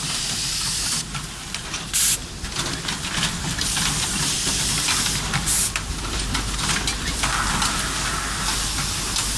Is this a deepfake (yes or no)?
no